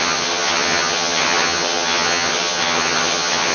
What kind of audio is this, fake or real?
fake